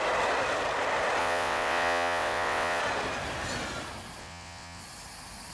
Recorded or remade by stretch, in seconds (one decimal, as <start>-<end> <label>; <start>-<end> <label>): 0.0-1.2 recorded; 1.2-2.8 remade; 2.8-4.2 recorded; 4.2-4.8 remade; 4.8-5.5 recorded